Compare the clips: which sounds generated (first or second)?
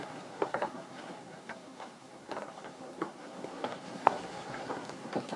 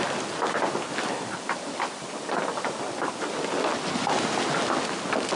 first